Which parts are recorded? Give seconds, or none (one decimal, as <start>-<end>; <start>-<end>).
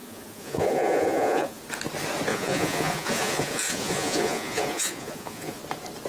1.6-2.3; 5.6-6.1